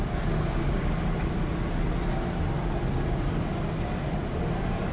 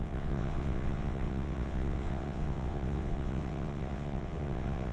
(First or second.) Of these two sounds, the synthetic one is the second